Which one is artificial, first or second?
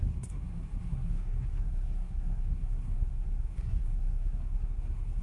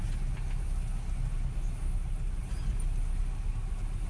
first